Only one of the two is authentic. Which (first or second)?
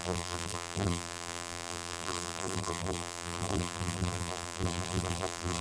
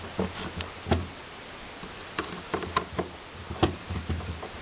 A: second